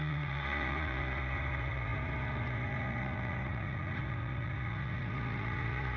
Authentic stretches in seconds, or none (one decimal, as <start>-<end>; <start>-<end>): none